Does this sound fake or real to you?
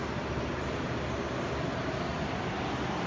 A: real